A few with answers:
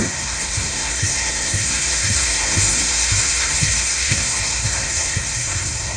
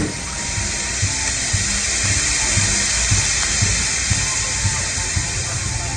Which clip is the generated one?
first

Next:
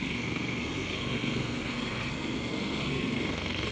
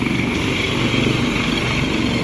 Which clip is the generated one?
first